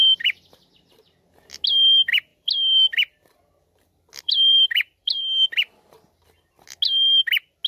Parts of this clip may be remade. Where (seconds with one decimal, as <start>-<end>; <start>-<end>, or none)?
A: 2.3-6.5